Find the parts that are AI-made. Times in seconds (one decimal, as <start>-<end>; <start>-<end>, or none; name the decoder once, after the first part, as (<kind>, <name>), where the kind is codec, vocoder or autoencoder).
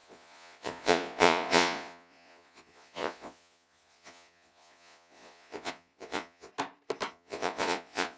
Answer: 0.0-6.5 (vocoder, Vocos); 7.1-8.2